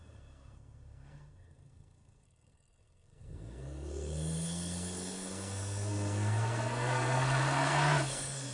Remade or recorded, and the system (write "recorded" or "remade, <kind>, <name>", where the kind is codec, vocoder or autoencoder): remade, codec, SNAC